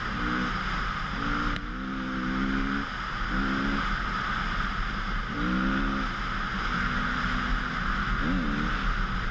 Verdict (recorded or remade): recorded